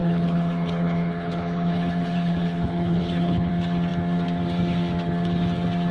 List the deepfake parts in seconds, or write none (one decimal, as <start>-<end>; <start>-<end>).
0.0-3.5